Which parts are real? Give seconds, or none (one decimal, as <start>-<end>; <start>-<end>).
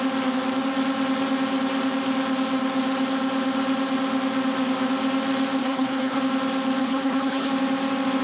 0.0-5.6; 6.2-6.8; 7.5-8.2